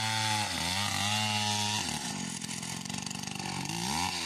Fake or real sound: real